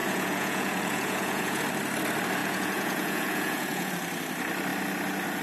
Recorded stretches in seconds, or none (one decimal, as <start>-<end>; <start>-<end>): 1.6-2.4; 3.9-5.4